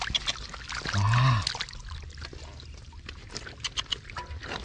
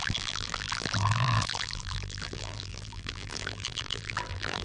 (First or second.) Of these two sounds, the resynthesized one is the second